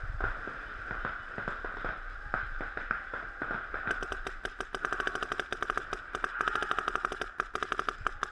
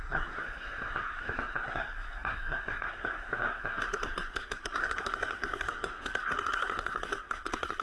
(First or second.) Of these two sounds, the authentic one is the first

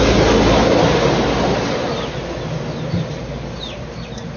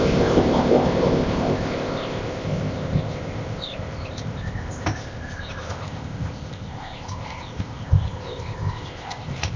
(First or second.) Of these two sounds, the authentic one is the first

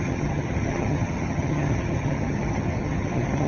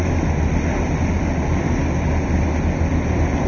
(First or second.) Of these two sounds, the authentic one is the second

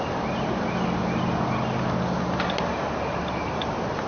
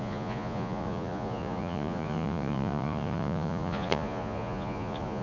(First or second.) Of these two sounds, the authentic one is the first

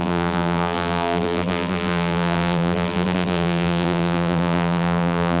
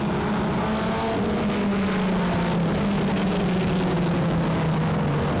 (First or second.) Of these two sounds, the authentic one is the second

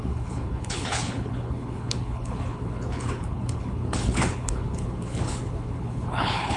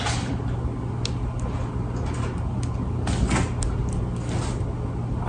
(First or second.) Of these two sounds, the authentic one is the second